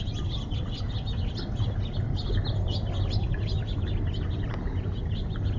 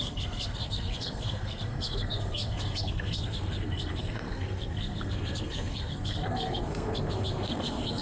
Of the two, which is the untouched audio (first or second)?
first